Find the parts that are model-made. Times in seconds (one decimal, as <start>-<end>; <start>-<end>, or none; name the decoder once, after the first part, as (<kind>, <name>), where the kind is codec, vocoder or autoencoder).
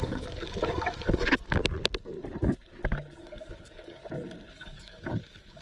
0.0-1.6 (codec, DAC); 3.2-4.0; 4.5-5.6